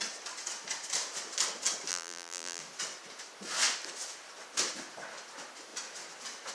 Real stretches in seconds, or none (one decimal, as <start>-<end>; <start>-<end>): 0.0-1.9; 2.6-6.5